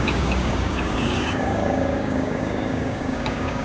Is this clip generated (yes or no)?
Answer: yes